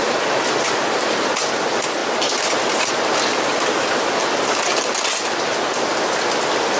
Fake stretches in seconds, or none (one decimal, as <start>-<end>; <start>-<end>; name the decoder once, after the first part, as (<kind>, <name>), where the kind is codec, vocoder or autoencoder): 3.3-3.9 (vocoder, BigVGAN v2)